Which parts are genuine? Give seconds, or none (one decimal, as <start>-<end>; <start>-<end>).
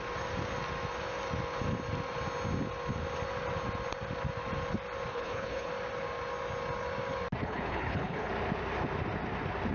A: 0.0-5.1; 5.7-7.4; 8.3-9.7